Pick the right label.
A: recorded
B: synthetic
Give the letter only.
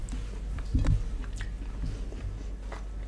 A